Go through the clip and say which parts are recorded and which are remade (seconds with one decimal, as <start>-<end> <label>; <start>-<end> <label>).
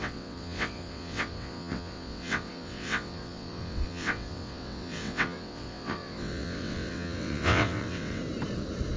0.0-8.2 remade; 8.2-9.0 recorded